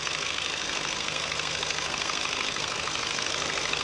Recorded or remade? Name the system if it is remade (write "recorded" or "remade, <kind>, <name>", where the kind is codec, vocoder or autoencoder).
remade, codec, SNAC